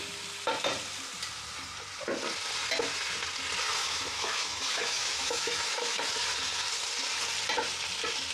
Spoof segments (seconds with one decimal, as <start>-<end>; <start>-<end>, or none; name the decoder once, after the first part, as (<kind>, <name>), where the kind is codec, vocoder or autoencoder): 3.8-6.0 (autoencoder, DAC-VAE)